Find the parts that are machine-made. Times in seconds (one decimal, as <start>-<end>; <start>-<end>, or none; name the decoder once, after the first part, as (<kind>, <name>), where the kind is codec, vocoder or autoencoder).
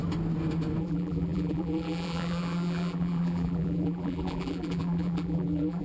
0.8-5.8 (vocoder, BigVGAN v2)